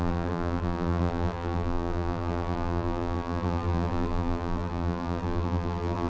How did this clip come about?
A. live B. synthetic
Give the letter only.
B